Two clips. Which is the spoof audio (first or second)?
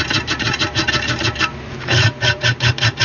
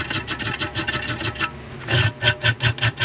first